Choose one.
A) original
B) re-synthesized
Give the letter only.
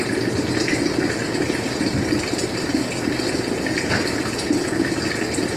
A